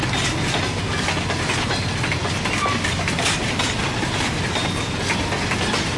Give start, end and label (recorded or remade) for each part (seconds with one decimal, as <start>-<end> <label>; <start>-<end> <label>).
0.0-6.0 recorded